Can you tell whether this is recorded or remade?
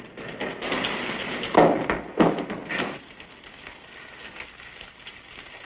recorded